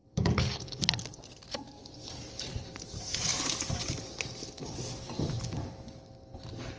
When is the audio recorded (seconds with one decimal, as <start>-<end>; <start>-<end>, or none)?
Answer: 0.8-6.8